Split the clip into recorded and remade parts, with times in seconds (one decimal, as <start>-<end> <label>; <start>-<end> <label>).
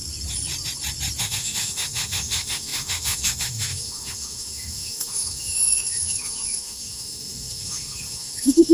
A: 0.0-1.2 recorded; 1.2-8.7 remade